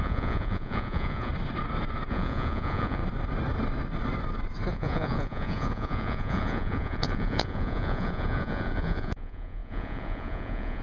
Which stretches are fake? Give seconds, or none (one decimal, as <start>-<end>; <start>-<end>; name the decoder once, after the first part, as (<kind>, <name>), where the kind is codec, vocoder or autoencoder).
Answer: 0.0-1.3 (vocoder, Vocos); 2.1-3.0; 4.7-10.8